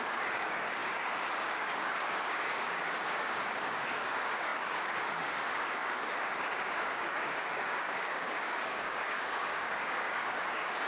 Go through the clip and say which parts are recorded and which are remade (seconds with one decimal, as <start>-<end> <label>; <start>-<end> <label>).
0.0-10.9 remade